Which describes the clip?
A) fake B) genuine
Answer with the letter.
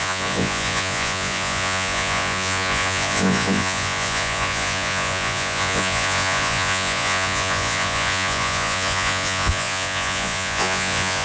A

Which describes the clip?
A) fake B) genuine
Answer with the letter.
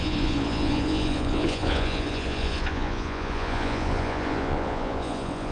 A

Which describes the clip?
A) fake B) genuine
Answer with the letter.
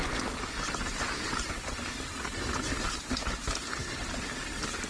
B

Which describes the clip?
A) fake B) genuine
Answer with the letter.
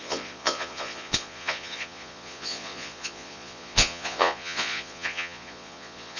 A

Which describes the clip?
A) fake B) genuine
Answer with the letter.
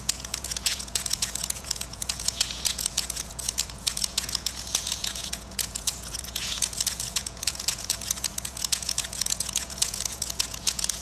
A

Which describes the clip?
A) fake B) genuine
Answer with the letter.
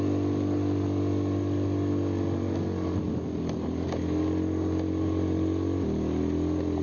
B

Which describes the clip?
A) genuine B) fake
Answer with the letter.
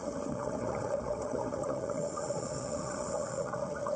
B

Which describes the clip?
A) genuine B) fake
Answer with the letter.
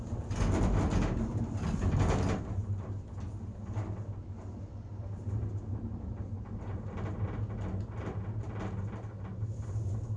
A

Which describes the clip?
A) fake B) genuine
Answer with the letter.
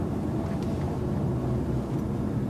B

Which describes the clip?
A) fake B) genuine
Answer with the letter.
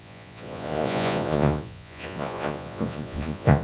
A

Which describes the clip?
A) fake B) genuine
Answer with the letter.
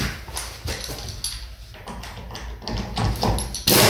B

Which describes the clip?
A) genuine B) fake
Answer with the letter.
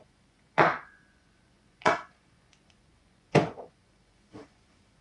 B